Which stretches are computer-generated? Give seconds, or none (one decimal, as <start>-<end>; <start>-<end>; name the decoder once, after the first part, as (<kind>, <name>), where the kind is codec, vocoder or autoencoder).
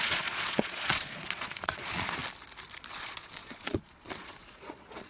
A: 0.0-2.2 (vocoder, Vocos); 2.9-5.1